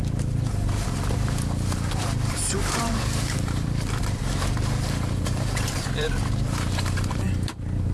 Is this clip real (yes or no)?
no